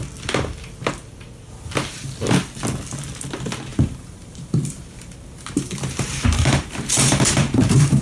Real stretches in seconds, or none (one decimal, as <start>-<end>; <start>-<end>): 0.0-3.7